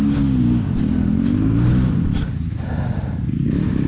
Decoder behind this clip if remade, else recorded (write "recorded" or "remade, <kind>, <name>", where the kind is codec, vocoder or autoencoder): recorded